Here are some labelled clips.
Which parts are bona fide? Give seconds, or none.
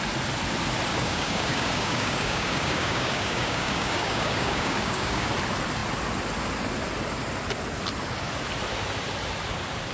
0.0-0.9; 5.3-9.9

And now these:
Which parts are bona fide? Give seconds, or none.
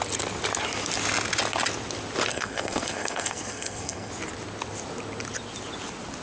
0.0-2.3; 4.1-6.2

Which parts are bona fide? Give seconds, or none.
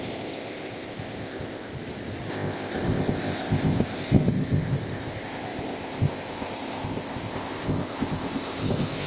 1.7-2.3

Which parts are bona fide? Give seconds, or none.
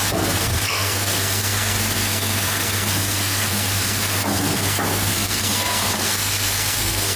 none